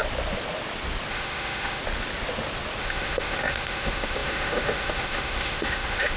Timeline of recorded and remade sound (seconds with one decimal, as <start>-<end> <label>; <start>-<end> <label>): 0.0-1.1 recorded; 1.1-1.8 remade; 1.8-2.8 recorded; 2.8-6.2 remade